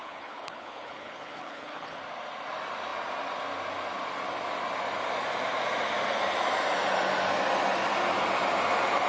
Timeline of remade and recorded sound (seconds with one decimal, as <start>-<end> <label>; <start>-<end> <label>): 0.0-2.0 remade; 2.0-9.1 recorded